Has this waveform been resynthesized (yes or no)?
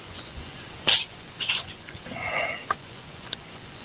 yes